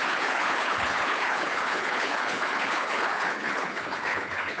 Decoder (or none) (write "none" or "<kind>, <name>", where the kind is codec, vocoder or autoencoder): codec, HILCodec